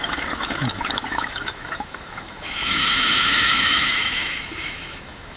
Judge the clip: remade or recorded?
remade